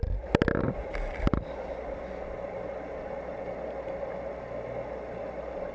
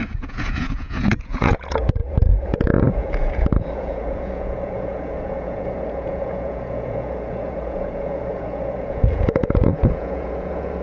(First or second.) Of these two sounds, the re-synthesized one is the second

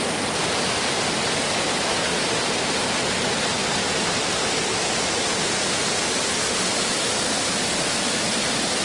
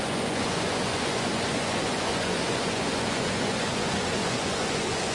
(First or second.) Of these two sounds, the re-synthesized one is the second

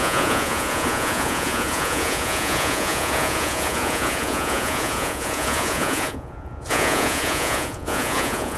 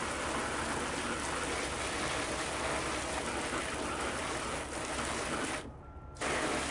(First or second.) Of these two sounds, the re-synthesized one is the first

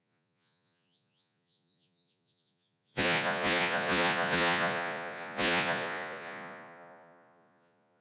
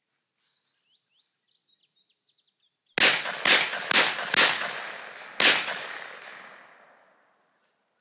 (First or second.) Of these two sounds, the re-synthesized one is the first